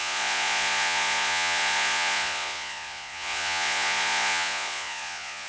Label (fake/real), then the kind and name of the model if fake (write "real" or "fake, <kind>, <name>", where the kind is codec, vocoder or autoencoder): fake, vocoder, Vocos